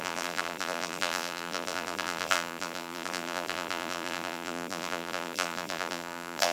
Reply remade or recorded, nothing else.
remade